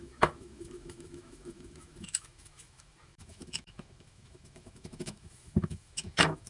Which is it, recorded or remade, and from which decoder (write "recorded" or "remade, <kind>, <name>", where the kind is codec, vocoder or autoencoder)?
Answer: remade, autoencoder, DAC-VAE